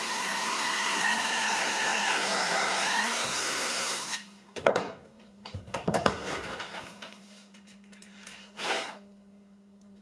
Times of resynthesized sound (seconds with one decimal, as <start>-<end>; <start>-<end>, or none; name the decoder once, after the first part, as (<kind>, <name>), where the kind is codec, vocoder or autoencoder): 0.0-10.0 (codec, SNAC)